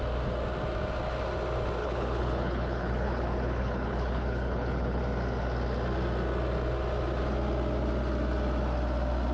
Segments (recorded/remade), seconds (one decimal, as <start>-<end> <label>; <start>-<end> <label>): 0.0-1.8 recorded; 1.8-5.0 remade; 5.0-9.3 recorded